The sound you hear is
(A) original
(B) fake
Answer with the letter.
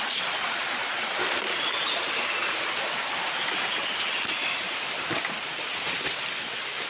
A